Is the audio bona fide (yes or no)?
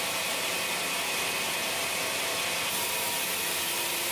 yes